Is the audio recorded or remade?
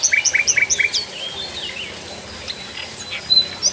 recorded